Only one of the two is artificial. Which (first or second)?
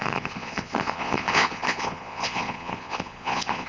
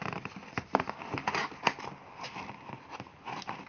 first